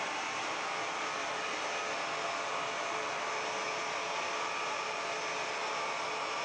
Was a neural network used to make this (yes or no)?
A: no